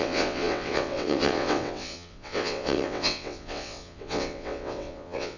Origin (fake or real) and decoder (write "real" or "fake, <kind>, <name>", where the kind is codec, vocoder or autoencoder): fake, vocoder, WaveNeXt